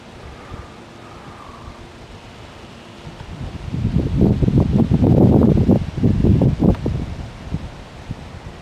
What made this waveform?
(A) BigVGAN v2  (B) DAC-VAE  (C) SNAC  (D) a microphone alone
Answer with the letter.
D